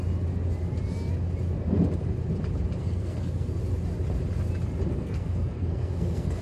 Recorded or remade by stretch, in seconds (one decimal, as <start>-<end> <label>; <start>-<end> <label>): 0.0-2.8 recorded; 2.8-3.6 remade; 3.6-4.9 recorded; 4.9-6.4 remade